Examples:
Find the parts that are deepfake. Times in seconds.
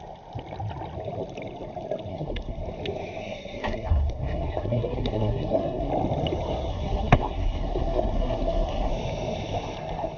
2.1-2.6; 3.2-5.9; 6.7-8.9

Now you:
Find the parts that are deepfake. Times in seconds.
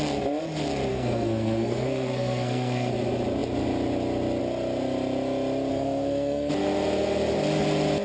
0.9-2.9; 5.7-6.5